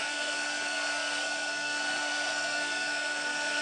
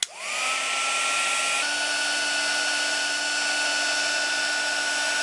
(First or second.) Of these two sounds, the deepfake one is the first